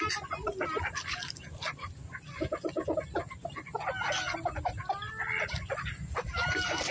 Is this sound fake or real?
real